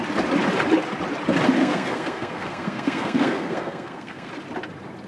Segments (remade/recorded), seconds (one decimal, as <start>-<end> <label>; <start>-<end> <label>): 0.0-1.6 recorded; 1.6-4.3 remade; 4.3-5.1 recorded